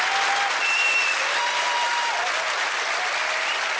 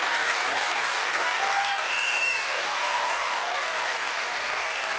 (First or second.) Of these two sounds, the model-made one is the second